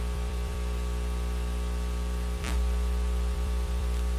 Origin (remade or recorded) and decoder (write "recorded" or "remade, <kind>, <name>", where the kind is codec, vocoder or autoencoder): remade, vocoder, BigVGAN v2